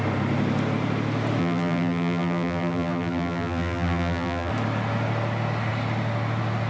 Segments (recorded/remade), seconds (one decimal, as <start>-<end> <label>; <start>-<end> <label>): 0.0-1.4 recorded; 1.4-4.5 remade; 4.5-6.7 recorded